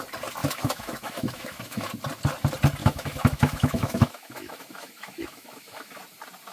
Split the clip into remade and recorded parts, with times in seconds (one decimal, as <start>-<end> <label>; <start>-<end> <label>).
0.0-0.4 recorded; 0.4-1.9 remade; 1.9-2.8 recorded; 2.8-6.0 remade; 6.0-6.5 recorded